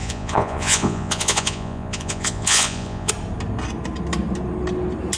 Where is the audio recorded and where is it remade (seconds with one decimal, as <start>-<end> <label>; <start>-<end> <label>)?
0.0-3.1 remade; 3.1-5.2 recorded